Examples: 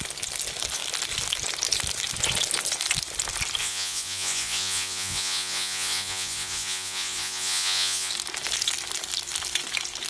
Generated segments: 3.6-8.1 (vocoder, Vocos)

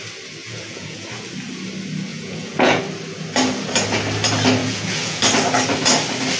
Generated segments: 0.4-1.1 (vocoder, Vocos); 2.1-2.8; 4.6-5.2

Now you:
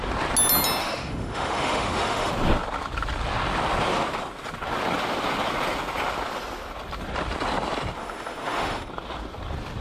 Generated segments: 0.8-2.3 (autoencoder, DAC-VAE); 8.0-8.9